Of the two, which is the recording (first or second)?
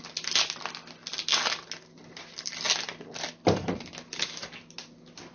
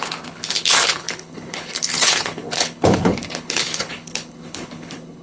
first